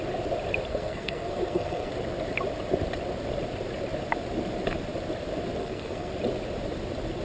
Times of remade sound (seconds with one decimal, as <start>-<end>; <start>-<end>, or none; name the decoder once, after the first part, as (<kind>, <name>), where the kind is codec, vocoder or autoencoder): 0.7-1.9 (codec, SNAC); 5.6-6.1